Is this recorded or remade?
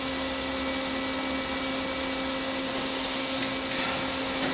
recorded